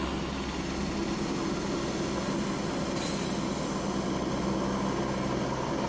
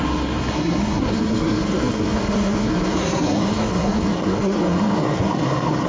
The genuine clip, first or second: first